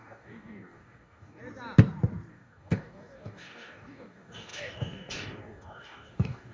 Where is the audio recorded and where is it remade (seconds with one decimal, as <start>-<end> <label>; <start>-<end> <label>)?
0.0-1.4 remade; 1.4-2.3 recorded; 2.3-6.5 remade

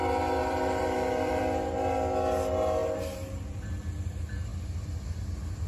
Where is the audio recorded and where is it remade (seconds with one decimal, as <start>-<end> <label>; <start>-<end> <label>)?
0.0-0.4 recorded; 0.4-1.4 remade; 1.4-2.8 recorded; 2.8-3.7 remade; 3.7-5.7 recorded